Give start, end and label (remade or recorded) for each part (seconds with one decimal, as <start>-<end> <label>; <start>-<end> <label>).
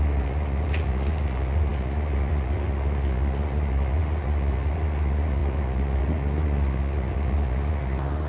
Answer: 0.0-8.3 remade